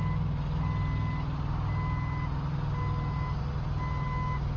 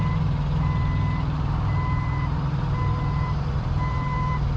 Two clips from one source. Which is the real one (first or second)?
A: first